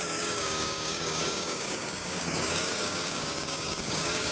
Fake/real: fake